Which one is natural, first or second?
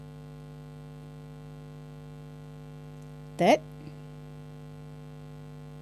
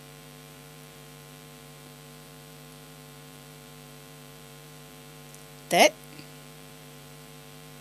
first